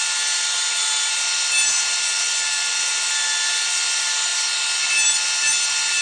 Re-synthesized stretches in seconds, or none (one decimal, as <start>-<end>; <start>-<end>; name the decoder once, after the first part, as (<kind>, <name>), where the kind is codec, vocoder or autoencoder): none